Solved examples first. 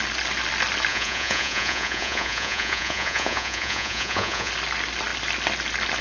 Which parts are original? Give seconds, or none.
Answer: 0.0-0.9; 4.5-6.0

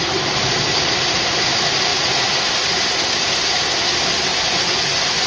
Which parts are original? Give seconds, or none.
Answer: 0.0-4.3